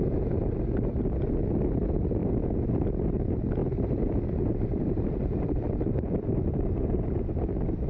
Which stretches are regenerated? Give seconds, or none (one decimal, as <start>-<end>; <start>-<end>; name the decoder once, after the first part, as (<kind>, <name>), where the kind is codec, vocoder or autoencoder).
3.6-7.3 (vocoder, BigVGAN v2)